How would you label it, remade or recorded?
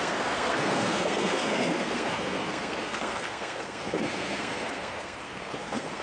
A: remade